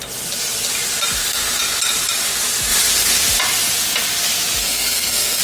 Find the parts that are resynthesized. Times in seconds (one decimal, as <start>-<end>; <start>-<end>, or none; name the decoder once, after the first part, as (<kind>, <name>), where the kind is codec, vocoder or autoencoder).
4.6-5.4 (codec, SNAC)